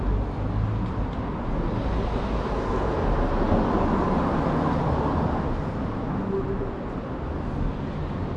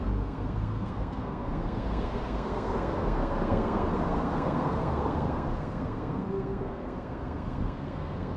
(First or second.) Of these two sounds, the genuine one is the first